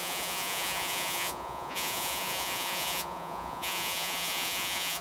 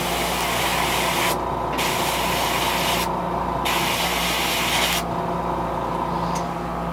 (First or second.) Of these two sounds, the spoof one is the first